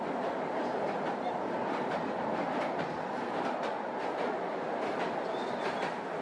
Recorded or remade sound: recorded